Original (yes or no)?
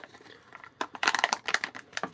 no